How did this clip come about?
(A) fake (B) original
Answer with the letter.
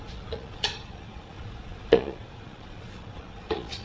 A